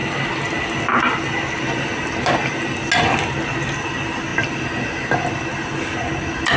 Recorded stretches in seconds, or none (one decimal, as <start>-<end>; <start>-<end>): 0.0-6.6